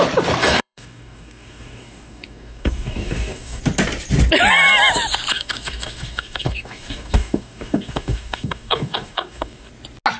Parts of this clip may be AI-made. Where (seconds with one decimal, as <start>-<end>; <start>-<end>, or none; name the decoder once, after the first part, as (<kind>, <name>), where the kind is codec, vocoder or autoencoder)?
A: 0.4-3.6 (codec, DAC); 5.3-9.7

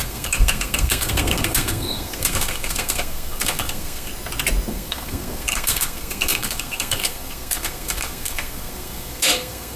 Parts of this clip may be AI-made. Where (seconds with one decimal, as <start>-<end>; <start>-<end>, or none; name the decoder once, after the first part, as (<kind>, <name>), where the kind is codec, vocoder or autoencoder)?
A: 0.0-4.1 (codec, SNAC); 4.7-9.8

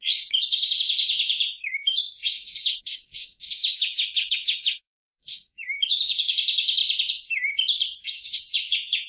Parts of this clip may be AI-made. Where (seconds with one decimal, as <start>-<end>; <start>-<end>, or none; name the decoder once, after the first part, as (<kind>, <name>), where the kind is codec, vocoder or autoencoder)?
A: 0.0-6.8 (codec, DAC); 8.1-9.1

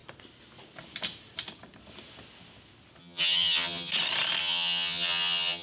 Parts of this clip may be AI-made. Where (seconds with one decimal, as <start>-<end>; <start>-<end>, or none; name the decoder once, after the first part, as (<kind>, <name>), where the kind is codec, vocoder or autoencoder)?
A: 3.0-3.9 (vocoder, HiFi-GAN); 4.4-5.6

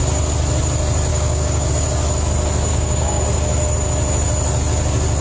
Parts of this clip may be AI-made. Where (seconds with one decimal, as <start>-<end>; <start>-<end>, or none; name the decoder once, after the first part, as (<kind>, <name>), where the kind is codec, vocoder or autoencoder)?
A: 1.1-1.7 (codec, DAC); 2.7-3.2